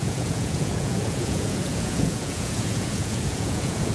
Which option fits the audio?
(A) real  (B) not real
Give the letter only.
B